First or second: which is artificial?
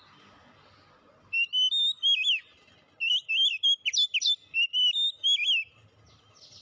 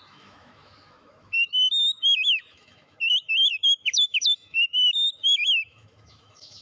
second